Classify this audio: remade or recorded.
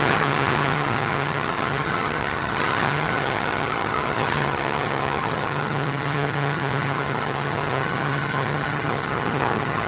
remade